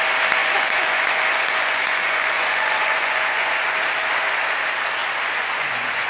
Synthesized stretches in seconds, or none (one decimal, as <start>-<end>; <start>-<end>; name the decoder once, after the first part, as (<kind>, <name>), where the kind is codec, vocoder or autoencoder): 0.4-3.8 (vocoder, Vocos); 5.0-6.1